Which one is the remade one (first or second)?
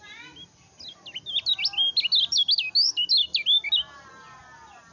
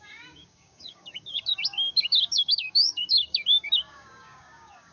second